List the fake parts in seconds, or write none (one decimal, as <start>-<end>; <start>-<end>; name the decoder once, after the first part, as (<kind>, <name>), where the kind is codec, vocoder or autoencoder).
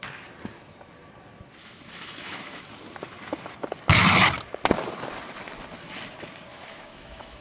1.6-2.7 (autoencoder, DAC-VAE); 6.5-7.4